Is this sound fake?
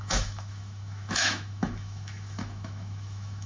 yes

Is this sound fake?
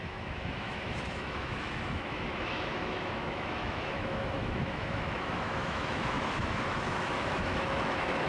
yes